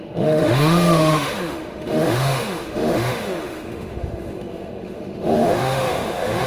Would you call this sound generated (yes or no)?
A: yes